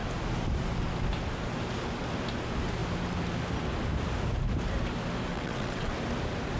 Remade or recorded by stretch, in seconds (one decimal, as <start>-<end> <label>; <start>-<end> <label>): 0.0-5.3 recorded; 5.3-5.9 remade; 5.9-6.6 recorded